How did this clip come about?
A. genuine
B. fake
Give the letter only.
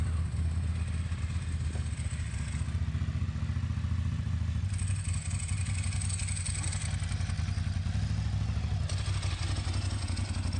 A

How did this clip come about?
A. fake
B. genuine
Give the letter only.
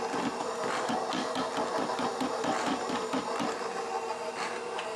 B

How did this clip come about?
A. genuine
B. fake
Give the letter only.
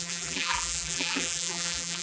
B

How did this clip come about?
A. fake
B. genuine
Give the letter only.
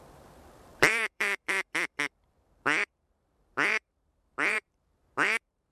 A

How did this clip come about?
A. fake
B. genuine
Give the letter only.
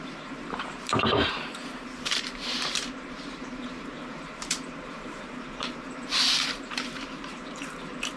A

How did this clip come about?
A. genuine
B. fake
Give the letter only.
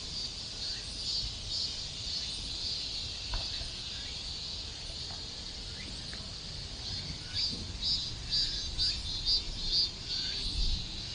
A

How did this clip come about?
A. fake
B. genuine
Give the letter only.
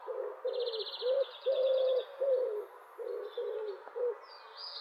B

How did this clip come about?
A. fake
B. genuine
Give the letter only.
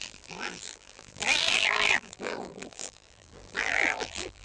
A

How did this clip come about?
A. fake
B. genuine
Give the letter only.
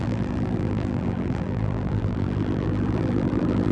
A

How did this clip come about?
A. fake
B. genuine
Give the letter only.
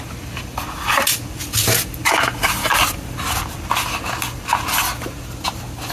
B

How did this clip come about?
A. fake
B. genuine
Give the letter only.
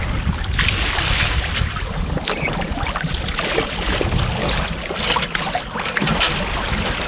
B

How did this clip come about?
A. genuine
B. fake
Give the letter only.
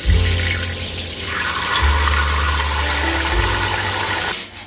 A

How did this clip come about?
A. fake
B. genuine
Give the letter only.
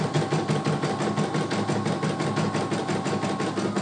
B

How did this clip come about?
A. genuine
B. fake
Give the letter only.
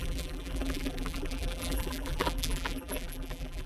B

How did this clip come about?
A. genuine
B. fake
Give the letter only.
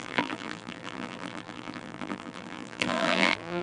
B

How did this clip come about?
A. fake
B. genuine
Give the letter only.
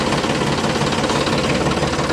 B